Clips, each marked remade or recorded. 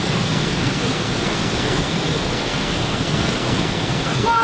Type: remade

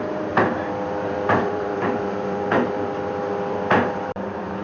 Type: remade